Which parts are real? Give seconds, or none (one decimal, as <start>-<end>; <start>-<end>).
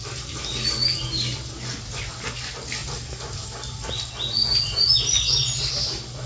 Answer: 0.0-6.3